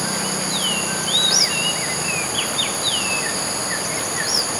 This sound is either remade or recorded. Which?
recorded